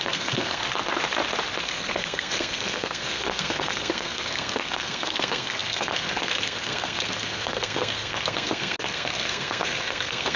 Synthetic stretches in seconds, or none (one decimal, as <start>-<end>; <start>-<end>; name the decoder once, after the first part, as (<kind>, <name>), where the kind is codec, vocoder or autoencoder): 0.0-0.6 (codec, SNAC); 1.6-10.4